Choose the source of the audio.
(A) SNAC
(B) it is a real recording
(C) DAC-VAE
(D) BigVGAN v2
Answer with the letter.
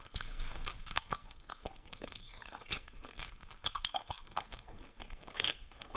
A